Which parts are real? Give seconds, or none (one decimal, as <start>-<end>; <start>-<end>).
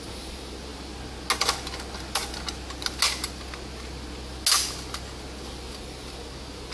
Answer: 0.0-6.7